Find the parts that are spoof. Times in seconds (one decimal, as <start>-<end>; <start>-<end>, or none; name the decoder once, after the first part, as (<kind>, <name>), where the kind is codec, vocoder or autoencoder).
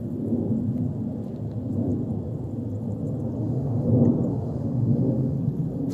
3.4-3.9 (autoencoder, DAC-VAE); 4.3-5.4